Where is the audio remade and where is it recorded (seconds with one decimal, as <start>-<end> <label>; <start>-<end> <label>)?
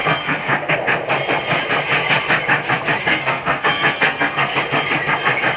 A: 0.0-0.7 remade; 0.7-3.1 recorded; 3.1-4.6 remade; 4.6-5.6 recorded